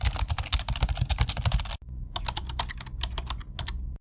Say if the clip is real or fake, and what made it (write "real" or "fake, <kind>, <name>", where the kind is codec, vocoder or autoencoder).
real